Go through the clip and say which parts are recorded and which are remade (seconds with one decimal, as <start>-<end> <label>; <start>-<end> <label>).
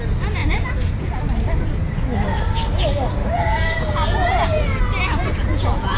0.0-0.4 recorded; 0.4-1.2 remade; 1.2-3.2 recorded; 3.2-4.8 remade; 4.8-6.0 recorded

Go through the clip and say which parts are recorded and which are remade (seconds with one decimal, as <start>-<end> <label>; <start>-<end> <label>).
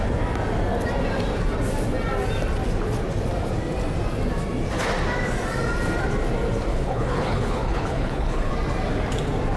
0.0-6.7 recorded; 6.7-8.5 remade; 8.5-9.6 recorded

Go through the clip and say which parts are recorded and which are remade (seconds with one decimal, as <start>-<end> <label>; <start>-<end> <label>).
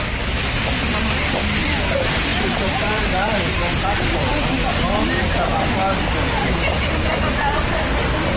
0.0-8.4 recorded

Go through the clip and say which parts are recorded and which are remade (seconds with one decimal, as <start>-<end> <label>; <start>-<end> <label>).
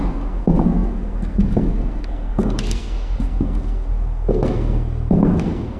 0.0-5.8 remade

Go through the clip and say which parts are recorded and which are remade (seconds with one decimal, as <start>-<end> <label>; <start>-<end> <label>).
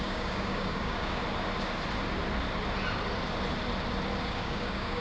0.0-1.2 remade; 1.2-4.2 recorded; 4.2-5.0 remade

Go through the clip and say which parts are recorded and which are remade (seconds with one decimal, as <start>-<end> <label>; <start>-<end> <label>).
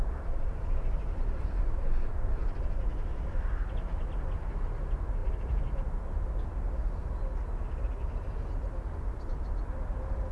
0.0-10.3 recorded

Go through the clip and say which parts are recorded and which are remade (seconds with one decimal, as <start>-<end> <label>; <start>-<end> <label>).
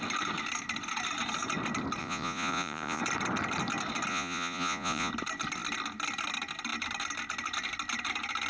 0.0-2.0 recorded; 2.0-3.0 remade; 3.0-4.1 recorded; 4.1-5.1 remade; 5.1-8.5 recorded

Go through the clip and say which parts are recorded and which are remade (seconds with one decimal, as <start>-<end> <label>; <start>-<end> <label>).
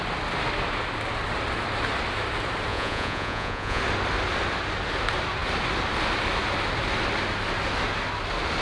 0.0-2.7 recorded; 2.7-3.8 remade; 3.8-8.6 recorded